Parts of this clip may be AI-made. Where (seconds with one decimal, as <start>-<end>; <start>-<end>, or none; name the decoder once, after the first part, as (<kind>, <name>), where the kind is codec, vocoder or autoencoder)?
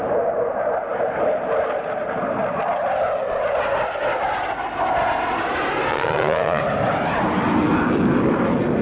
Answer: 5.9-6.6 (vocoder, Vocos)